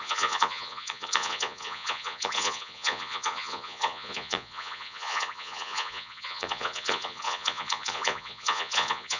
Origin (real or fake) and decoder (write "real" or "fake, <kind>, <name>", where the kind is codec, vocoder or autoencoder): fake, vocoder, Vocos